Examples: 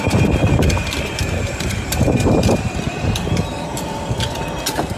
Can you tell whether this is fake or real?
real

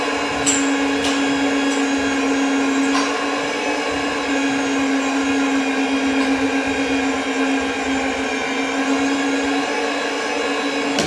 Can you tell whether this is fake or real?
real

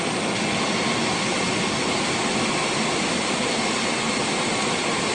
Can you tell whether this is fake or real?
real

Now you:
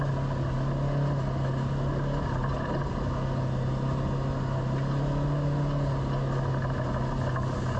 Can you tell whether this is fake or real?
real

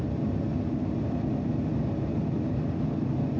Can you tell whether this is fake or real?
real